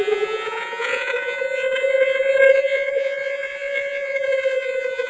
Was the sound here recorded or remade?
remade